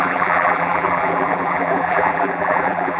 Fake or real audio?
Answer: fake